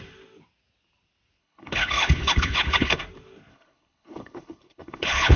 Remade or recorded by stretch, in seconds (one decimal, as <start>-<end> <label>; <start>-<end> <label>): 0.0-1.4 recorded; 1.4-3.0 remade; 3.0-3.5 recorded; 3.5-5.4 remade